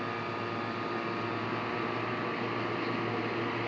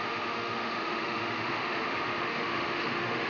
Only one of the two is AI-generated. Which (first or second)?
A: second